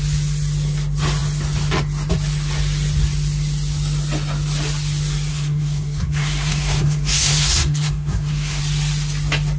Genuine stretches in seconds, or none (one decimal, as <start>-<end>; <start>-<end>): 0.0-5.3; 8.6-9.6